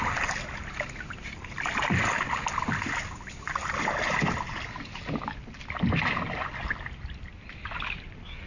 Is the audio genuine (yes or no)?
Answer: yes